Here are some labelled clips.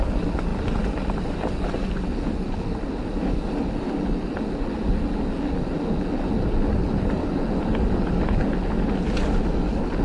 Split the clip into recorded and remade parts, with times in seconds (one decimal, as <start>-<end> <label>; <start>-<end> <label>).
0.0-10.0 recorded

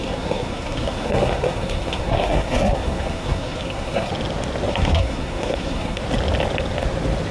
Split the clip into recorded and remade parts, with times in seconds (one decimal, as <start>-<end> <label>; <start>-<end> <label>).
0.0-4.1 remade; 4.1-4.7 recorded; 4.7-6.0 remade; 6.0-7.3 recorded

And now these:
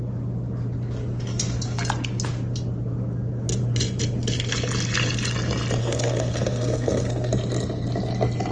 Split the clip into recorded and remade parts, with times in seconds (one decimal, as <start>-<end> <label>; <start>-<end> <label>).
0.0-5.8 recorded; 5.8-7.3 remade; 7.3-8.5 recorded

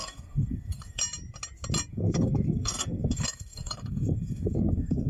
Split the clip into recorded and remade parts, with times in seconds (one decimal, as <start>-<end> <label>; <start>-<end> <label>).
0.0-1.0 remade; 1.0-1.9 recorded; 1.9-5.1 remade